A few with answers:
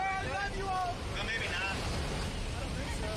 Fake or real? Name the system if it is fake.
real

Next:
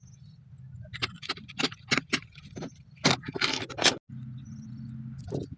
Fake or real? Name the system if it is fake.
real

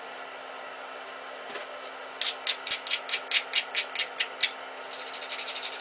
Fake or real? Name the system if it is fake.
real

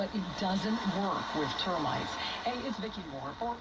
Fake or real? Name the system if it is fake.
real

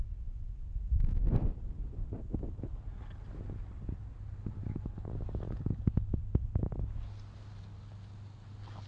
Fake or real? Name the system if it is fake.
real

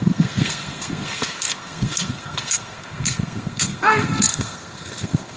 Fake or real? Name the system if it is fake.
fake, codec, SNAC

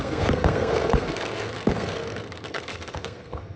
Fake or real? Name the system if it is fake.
fake, codec, SNAC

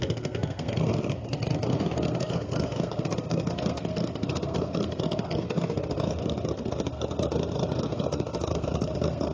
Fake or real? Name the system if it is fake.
fake, codec, SNAC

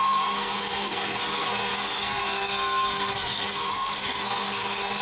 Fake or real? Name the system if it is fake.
fake, codec, SNAC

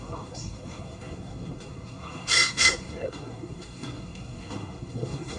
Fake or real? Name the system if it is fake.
fake, codec, SNAC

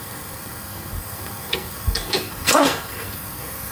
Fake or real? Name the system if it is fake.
fake, codec, SNAC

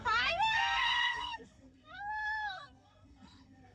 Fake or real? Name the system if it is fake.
fake, codec, SNAC